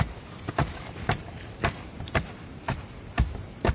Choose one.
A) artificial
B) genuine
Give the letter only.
B